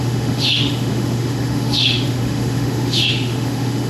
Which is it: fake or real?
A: fake